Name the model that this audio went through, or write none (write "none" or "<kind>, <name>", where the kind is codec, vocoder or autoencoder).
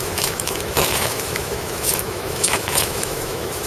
autoencoder, DAC-VAE